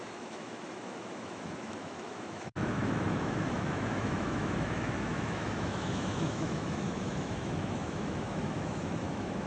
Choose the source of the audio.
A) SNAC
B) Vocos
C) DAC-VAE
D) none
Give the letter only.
C